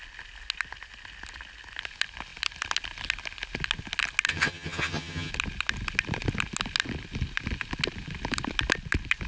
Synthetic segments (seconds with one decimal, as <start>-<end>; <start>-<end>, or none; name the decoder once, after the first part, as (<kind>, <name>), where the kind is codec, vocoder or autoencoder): 4.3-5.3 (vocoder, HiFi-GAN)